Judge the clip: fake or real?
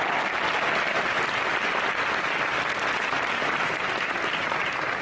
real